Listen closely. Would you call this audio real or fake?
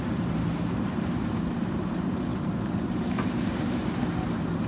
fake